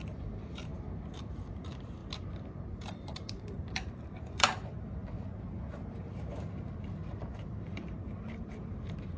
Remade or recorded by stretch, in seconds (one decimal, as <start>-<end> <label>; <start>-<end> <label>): 0.0-0.7 remade; 0.7-1.2 recorded; 1.2-2.0 remade; 2.0-2.7 recorded; 2.7-9.2 remade